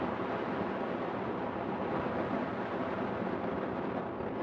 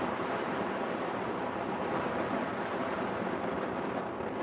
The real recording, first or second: first